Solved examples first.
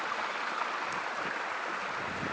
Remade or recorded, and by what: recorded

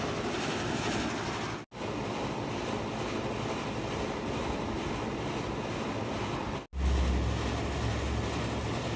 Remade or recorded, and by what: recorded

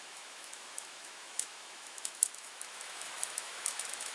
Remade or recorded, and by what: remade, autoencoder, DAC-VAE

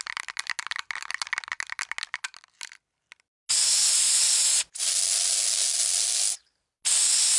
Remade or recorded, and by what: recorded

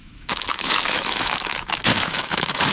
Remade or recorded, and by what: remade, autoencoder, DAC-VAE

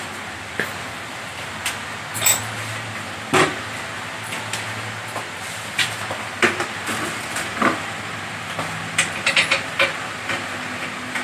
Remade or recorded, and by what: recorded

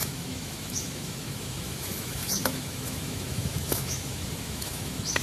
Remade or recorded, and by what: remade, autoencoder, DAC-VAE